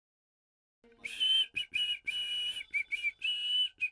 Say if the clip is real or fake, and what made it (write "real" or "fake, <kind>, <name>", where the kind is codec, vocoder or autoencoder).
real